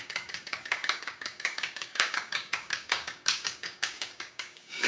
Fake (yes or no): yes